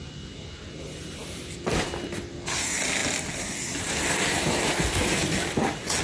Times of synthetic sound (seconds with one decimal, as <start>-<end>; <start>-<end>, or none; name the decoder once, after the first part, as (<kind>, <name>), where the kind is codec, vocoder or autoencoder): none